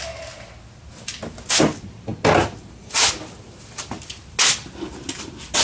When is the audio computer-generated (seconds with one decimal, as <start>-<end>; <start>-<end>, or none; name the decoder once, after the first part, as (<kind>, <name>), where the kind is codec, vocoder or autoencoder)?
none